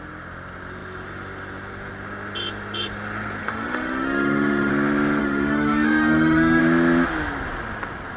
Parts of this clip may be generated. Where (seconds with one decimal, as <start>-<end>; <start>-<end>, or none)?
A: 3.4-4.7; 5.2-6.6